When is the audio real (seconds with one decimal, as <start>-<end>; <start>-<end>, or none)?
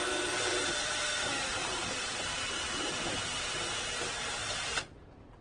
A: 0.0-0.5; 3.7-4.4